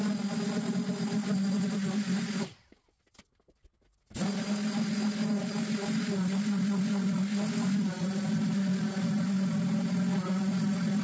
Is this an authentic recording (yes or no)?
yes